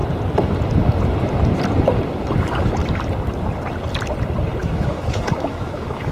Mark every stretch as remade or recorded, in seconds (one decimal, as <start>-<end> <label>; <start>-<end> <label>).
0.0-4.6 recorded; 4.6-6.1 remade